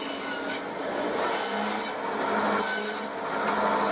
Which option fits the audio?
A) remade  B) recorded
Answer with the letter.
B